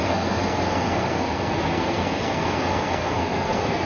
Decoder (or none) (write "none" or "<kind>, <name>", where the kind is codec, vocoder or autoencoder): codec, SNAC